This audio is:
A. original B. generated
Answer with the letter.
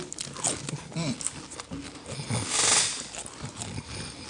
A